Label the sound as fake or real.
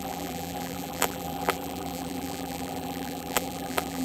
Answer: fake